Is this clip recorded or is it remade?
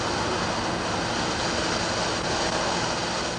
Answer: recorded